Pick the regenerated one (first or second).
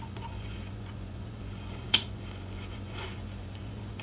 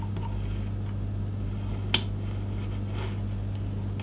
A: first